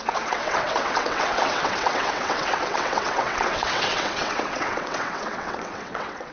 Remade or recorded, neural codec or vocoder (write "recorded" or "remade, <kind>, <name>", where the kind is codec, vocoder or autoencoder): remade, vocoder, WaveNeXt